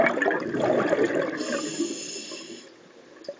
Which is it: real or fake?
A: real